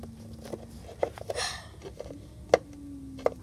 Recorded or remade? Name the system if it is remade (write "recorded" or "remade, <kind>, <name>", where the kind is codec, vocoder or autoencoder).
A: recorded